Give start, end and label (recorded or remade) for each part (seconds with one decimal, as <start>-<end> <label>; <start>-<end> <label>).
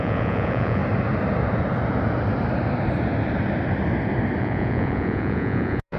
0.0-0.8 remade; 0.8-4.4 recorded; 4.4-6.0 remade